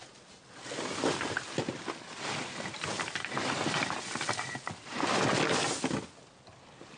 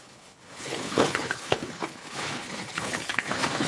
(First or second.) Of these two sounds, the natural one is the first